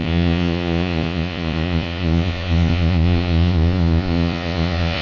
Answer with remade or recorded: remade